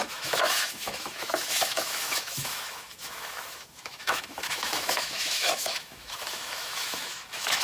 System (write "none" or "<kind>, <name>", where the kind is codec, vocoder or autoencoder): autoencoder, DAC-VAE